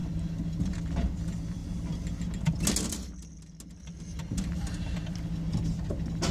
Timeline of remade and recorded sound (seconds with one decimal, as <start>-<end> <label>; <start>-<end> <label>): 0.0-6.3 recorded